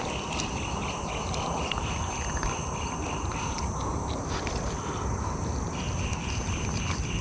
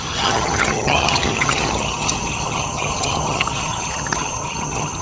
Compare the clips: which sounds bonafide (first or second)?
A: first